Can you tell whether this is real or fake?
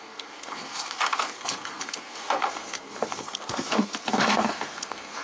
fake